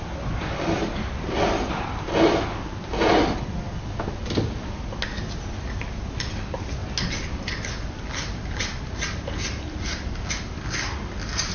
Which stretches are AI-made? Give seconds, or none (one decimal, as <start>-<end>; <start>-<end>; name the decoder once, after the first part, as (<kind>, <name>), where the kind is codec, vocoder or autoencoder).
none